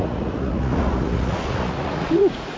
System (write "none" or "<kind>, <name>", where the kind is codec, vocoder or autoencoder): vocoder, Vocos